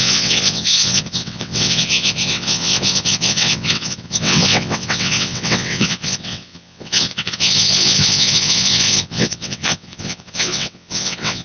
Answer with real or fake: fake